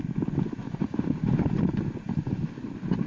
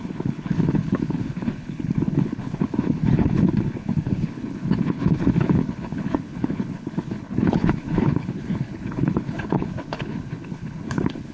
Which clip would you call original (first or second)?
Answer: first